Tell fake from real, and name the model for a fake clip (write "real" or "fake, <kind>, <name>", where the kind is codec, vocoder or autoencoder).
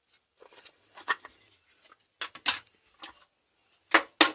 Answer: real